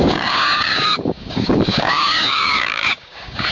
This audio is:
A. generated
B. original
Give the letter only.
A